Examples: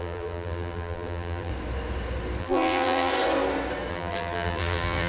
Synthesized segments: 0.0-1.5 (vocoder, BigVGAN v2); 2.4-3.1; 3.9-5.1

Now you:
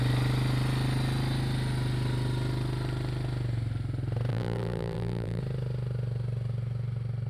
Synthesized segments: 4.3-5.4 (vocoder, BigVGAN v2)

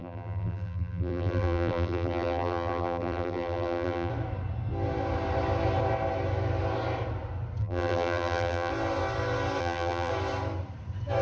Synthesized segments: 0.0-4.1 (vocoder, BigVGAN v2); 7.6-8.7; 9.6-10.1